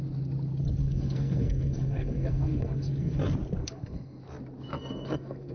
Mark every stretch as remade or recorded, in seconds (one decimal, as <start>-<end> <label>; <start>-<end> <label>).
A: 0.0-0.8 recorded; 0.8-3.2 remade; 3.2-3.6 recorded; 3.6-4.2 remade; 4.2-4.7 recorded; 4.7-5.5 remade